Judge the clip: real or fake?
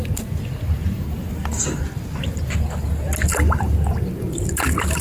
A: real